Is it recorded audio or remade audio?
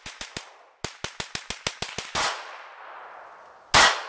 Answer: recorded